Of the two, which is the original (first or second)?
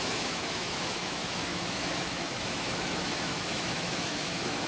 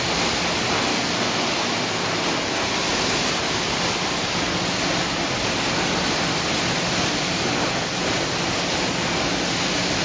second